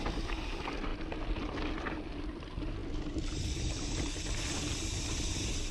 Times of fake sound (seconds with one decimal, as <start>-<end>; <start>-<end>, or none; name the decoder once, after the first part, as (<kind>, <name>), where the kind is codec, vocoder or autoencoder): none